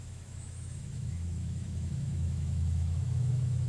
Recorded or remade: remade